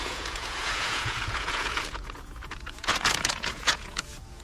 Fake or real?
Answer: fake